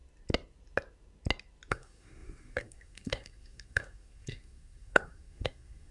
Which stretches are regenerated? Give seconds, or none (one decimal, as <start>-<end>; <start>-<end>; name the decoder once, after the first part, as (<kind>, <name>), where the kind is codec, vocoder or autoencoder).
1.7-5.9 (codec, SNAC)